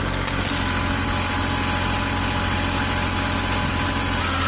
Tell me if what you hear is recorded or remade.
recorded